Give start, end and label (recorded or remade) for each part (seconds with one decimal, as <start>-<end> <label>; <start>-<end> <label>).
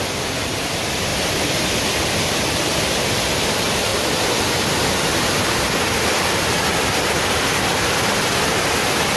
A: 0.0-5.1 remade; 5.1-5.7 recorded; 5.7-9.2 remade